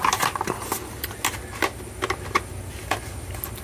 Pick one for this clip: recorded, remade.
recorded